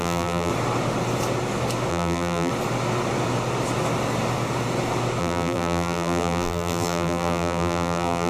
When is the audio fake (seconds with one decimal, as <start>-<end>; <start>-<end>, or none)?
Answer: 0.0-0.5; 1.9-2.5; 5.2-8.3